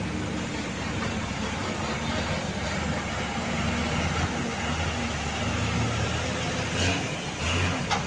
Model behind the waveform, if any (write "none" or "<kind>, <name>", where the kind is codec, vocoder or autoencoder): none